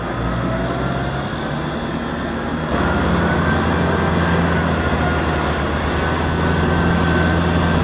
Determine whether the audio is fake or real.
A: real